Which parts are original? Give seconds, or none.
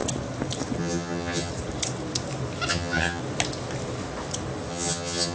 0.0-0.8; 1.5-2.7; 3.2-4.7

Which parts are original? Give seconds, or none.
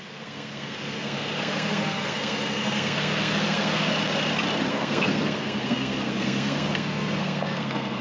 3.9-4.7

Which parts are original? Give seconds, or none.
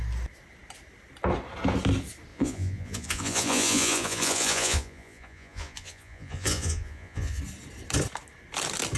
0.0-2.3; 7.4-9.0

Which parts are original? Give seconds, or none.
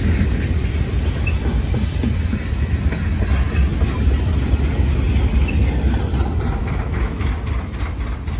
0.0-6.6; 7.2-8.4